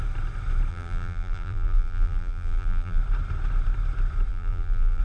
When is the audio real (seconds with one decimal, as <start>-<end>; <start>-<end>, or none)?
0.0-0.7; 3.0-4.3